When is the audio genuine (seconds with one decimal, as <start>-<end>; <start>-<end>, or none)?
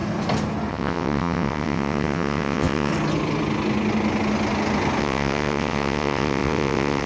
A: 0.0-0.7; 2.9-5.0